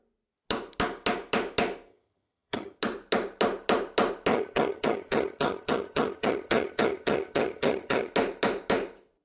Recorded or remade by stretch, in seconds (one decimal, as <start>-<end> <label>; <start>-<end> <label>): 0.0-1.9 recorded; 1.9-2.8 remade; 2.8-4.3 recorded; 4.3-8.1 remade; 8.1-9.2 recorded